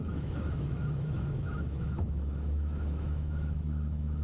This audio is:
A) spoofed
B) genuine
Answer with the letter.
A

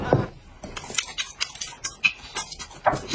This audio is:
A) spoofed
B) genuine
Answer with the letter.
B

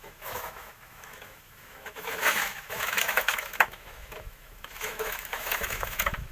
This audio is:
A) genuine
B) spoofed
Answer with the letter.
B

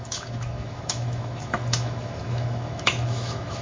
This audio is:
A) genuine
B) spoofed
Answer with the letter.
B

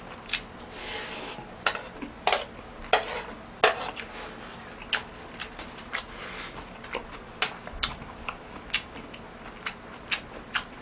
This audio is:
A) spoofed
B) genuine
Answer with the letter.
B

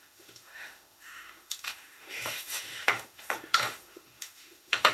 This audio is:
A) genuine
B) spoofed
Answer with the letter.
B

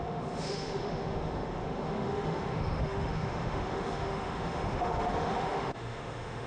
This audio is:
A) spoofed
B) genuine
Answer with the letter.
A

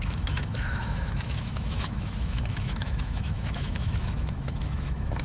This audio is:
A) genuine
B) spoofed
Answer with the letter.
B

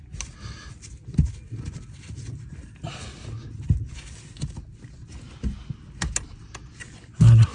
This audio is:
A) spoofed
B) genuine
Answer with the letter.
B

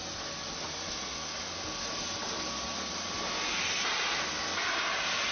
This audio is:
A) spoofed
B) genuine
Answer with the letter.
B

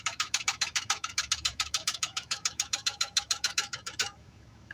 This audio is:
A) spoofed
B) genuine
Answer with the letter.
A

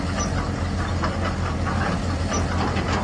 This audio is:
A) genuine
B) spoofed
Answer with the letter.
A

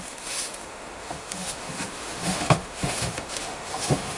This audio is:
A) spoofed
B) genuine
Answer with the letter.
A